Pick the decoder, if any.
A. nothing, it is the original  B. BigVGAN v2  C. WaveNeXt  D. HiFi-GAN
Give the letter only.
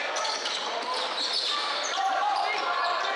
A